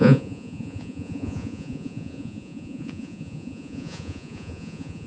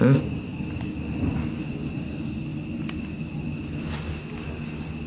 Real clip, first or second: second